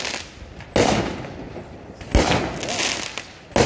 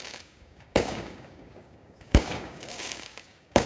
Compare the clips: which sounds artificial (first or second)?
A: second